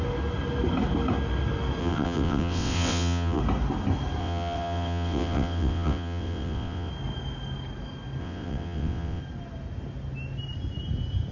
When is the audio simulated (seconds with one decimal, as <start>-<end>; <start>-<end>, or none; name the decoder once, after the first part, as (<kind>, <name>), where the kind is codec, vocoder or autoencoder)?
1.8-3.4 (vocoder, WaveNeXt); 4.2-6.9; 8.2-9.2